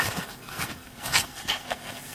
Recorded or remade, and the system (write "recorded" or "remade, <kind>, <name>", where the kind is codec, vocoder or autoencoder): remade, codec, SNAC